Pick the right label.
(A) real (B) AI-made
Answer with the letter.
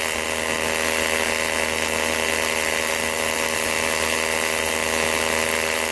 A